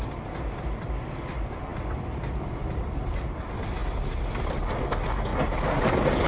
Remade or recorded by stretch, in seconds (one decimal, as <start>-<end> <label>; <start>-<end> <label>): 0.0-1.7 recorded; 1.7-2.9 remade; 2.9-5.3 recorded; 5.3-5.8 remade; 5.8-6.3 recorded